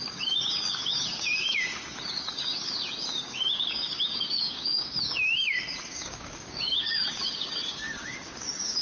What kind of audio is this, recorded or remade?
remade